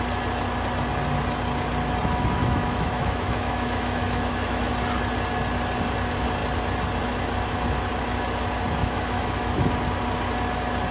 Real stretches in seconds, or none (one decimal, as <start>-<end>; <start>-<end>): 0.0-2.4; 4.7-8.8; 9.7-10.9